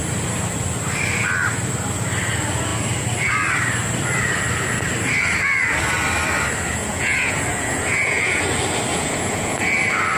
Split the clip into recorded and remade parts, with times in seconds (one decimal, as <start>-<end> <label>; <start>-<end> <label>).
0.0-6.8 recorded; 6.8-8.4 remade; 8.4-8.9 recorded; 8.9-9.6 remade; 9.6-10.2 recorded